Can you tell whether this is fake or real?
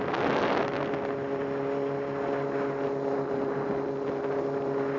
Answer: real